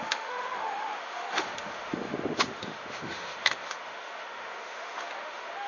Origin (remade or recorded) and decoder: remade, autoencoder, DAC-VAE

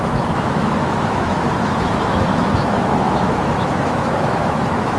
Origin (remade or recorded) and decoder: remade, autoencoder, DAC-VAE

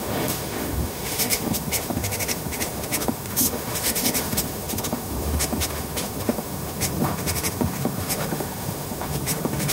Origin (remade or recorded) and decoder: remade, autoencoder, DAC-VAE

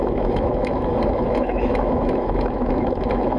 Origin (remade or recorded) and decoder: remade, autoencoder, DAC-VAE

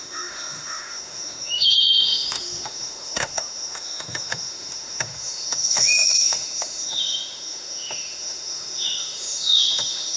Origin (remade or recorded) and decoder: remade, autoencoder, DAC-VAE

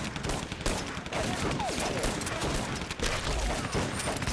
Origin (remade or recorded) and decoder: recorded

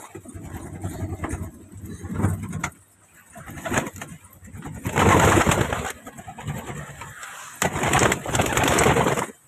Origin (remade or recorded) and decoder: recorded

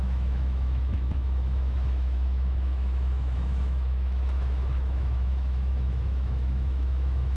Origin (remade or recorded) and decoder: remade, autoencoder, DAC-VAE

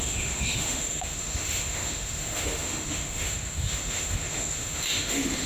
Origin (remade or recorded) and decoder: remade, autoencoder, DAC-VAE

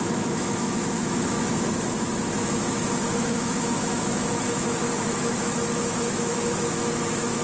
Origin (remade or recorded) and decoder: remade, autoencoder, DAC-VAE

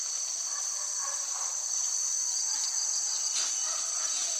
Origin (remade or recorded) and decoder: recorded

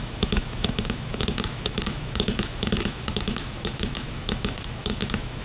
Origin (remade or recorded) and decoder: remade, autoencoder, DAC-VAE